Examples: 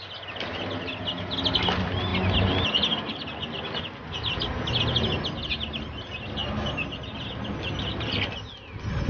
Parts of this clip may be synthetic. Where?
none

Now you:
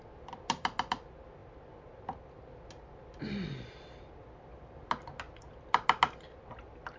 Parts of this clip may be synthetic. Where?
none

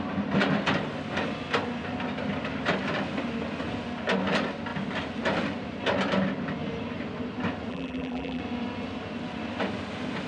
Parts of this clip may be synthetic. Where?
7.7-8.4 (vocoder, BigVGAN v2)

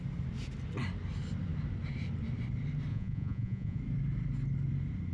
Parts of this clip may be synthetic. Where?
2.9-3.8 (vocoder, Vocos)

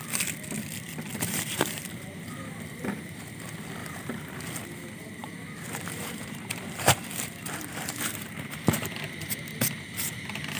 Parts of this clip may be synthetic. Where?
1.1-2.4 (vocoder, BigVGAN v2); 3.8-4.4; 5.2-8.3

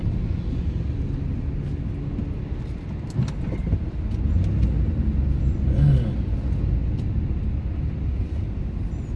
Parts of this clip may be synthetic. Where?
none

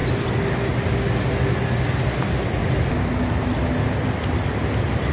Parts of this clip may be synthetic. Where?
none

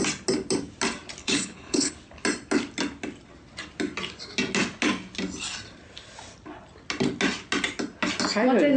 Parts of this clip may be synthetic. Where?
1.2-1.9 (codec, HILCodec)